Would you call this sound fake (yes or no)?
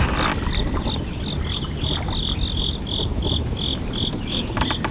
no